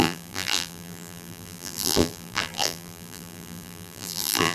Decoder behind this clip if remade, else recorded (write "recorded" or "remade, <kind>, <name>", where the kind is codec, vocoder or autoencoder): remade, vocoder, BigVGAN v2